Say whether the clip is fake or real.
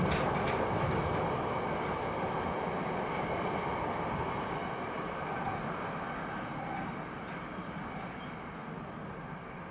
real